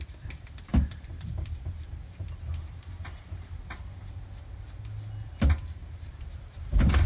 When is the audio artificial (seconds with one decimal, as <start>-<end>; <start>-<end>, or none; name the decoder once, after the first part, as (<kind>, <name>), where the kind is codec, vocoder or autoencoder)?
0.7-3.6 (vocoder, BigVGAN v2); 5.8-6.6